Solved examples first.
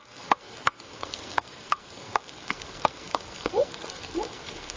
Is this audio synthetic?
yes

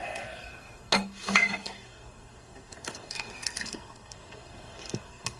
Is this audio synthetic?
yes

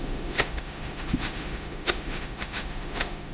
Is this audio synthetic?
yes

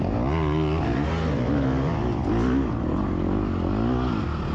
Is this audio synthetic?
no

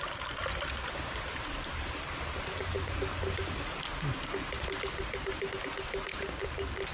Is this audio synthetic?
no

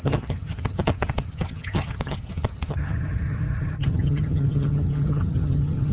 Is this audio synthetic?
yes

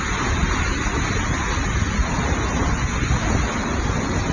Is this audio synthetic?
no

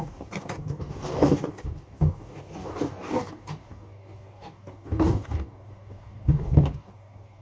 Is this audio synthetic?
yes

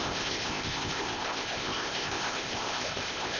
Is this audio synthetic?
yes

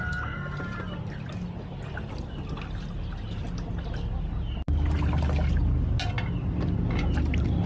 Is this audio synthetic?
no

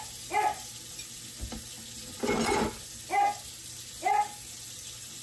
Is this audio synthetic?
no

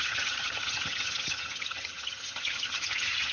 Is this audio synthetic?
yes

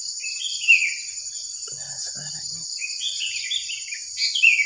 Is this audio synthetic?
no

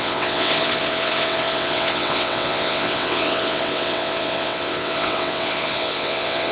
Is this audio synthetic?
yes